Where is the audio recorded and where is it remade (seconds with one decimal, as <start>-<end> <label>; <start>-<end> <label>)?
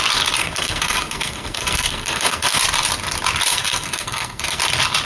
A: 0.0-0.4 recorded; 0.4-2.6 remade; 2.6-3.5 recorded; 3.5-4.6 remade; 4.6-5.0 recorded